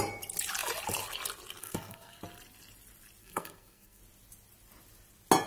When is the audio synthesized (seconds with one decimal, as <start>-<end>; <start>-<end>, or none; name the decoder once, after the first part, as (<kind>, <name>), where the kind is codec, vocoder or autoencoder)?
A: 1.6-2.2 (codec, SNAC); 3.2-4.0